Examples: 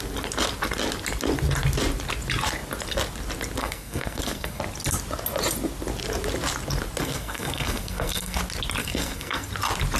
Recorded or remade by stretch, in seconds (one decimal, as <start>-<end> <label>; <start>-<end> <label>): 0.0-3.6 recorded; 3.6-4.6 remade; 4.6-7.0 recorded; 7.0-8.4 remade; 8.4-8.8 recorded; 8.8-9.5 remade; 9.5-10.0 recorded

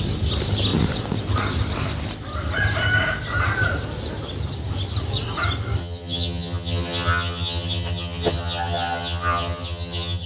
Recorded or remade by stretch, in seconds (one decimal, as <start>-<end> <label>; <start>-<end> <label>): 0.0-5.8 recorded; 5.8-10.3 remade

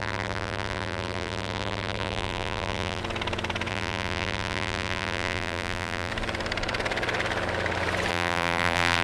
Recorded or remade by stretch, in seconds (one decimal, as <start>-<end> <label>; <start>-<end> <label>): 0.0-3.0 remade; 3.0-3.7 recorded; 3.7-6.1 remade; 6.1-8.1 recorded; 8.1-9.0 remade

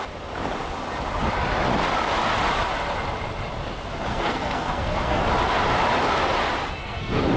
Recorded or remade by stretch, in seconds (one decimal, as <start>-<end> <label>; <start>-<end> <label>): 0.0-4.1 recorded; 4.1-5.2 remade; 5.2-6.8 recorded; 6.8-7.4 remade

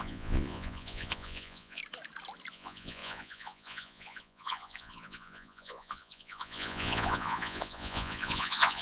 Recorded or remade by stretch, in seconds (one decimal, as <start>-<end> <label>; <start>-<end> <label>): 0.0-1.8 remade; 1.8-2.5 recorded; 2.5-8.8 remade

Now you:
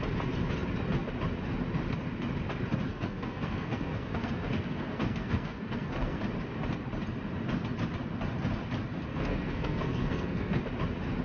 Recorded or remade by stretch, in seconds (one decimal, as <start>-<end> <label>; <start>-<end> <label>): 0.0-2.9 recorded; 2.9-6.2 remade; 6.2-9.1 recorded; 9.1-10.6 remade; 10.6-11.2 recorded

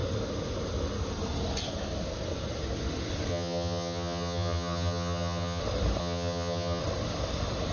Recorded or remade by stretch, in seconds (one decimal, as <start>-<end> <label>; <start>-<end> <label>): 0.0-3.3 recorded; 3.3-5.6 remade; 5.6-6.0 recorded; 6.0-6.8 remade; 6.8-7.7 recorded